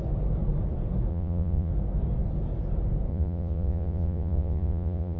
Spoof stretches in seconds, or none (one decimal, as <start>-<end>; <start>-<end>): 1.1-1.7; 3.1-5.2